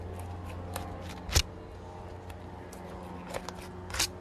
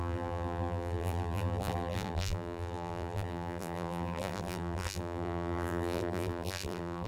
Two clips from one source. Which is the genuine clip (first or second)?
first